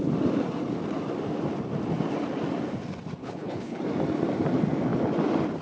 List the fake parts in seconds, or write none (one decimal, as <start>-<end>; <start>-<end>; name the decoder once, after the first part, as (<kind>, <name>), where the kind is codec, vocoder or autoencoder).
3.2-3.8 (codec, HILCodec)